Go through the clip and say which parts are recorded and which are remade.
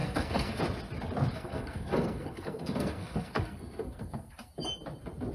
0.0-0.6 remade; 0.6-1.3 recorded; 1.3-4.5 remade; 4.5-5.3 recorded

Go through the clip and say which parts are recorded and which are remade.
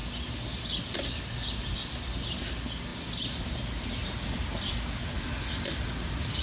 0.0-6.4 recorded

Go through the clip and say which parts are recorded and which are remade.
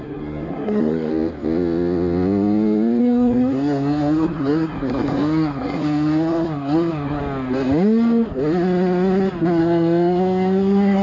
0.0-1.1 remade; 1.1-3.0 recorded; 3.0-7.2 remade; 7.2-9.6 recorded; 9.6-11.0 remade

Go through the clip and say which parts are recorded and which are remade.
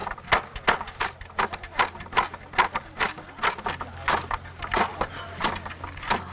0.0-4.9 recorded; 4.9-5.4 remade; 5.4-6.3 recorded